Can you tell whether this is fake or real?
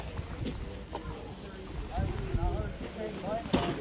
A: real